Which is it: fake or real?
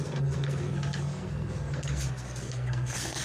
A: fake